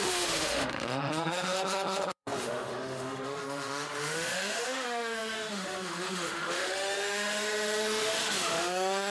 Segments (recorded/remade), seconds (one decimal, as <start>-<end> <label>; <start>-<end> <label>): 0.0-9.1 remade